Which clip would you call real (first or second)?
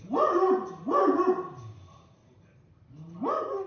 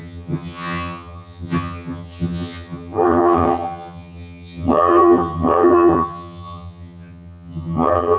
first